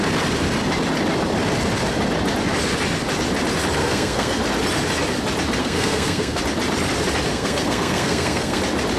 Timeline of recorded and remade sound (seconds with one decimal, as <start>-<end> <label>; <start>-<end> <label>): 0.0-3.8 recorded; 3.8-4.4 remade; 4.4-5.6 recorded; 5.6-6.4 remade; 6.4-7.3 recorded; 7.3-8.6 remade; 8.6-9.0 recorded